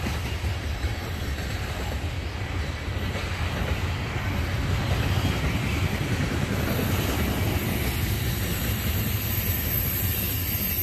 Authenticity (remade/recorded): recorded